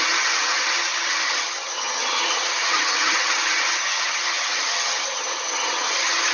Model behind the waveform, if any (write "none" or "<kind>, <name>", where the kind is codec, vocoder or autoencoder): vocoder, HiFi-GAN